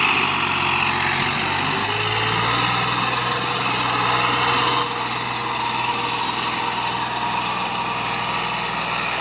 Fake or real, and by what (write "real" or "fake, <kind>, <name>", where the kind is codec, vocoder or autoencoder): real